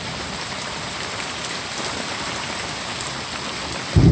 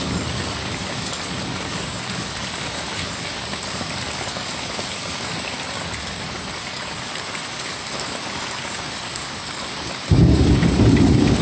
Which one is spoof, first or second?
second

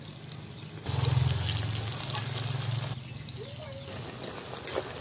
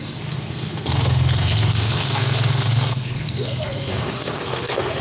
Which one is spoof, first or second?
second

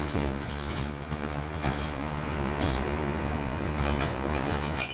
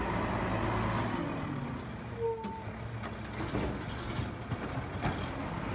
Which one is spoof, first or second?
first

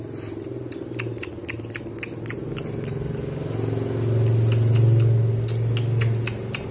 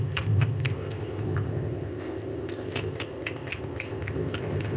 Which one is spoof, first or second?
second